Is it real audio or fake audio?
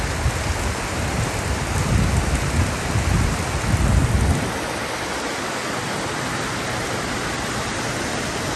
real